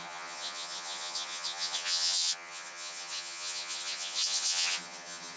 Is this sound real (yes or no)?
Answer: no